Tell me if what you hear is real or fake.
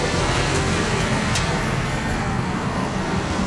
fake